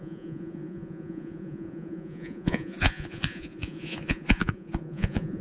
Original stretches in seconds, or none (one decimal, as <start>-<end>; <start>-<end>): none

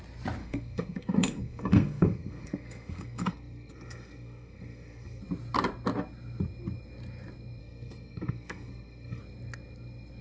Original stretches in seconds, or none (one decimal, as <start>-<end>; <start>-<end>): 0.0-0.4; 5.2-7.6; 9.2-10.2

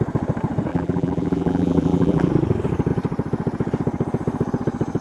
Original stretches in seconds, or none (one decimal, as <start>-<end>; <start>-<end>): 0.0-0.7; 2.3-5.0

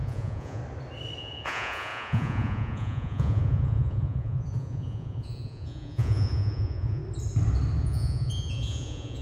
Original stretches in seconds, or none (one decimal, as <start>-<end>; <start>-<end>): 0.6-1.2; 7.0-7.8

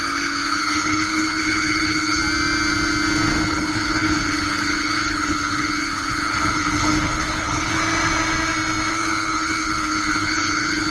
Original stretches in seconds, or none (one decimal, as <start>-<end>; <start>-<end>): 2.2-3.5; 7.8-8.9